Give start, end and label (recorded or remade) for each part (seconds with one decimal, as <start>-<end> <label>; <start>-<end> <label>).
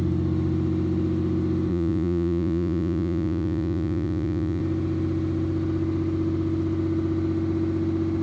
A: 0.0-1.7 recorded; 1.7-4.6 remade; 4.6-8.2 recorded